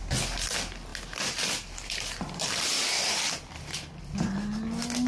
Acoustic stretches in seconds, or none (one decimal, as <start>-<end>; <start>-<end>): 0.0-0.9; 4.0-5.1